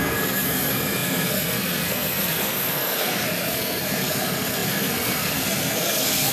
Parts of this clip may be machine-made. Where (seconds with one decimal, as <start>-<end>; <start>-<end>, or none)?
0.0-6.3